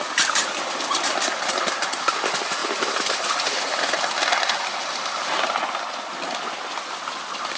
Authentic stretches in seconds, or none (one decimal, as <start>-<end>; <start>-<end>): 0.0-7.6